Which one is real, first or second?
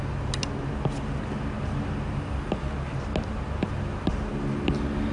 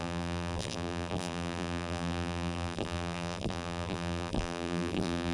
first